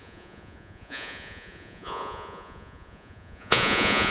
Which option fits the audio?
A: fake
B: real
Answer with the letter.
A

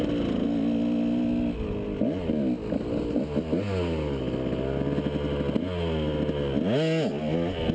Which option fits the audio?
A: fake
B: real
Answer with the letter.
B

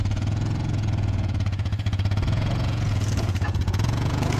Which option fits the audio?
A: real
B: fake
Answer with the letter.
B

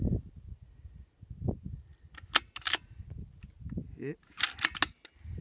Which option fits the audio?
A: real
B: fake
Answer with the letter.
A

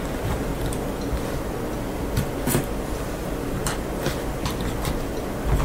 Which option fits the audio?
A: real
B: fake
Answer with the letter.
A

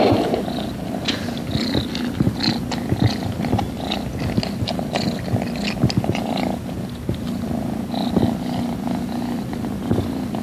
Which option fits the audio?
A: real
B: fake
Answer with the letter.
A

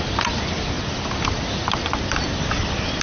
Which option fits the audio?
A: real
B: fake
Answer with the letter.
A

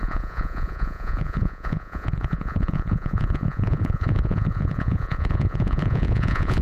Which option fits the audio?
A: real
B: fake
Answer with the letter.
B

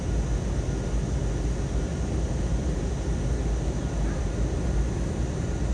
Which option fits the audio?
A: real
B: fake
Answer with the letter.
A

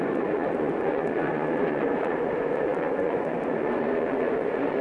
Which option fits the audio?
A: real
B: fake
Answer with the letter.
B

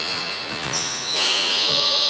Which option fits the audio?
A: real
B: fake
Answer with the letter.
B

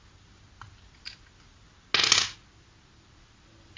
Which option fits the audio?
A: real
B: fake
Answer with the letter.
A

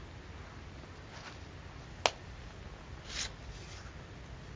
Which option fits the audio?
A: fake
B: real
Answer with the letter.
B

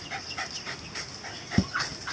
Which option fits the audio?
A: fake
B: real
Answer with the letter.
B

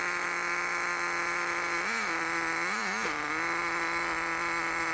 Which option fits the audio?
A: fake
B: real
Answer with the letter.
B